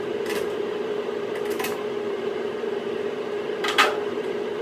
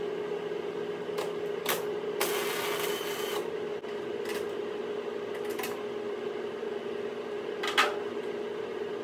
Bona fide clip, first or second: second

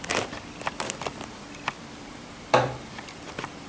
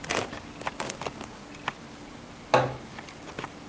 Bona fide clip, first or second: second